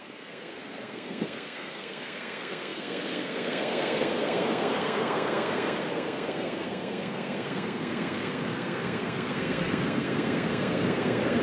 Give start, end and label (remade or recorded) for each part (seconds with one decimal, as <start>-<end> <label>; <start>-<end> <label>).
0.0-11.4 remade